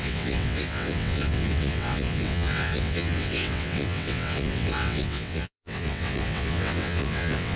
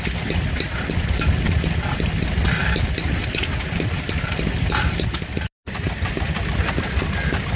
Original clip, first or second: second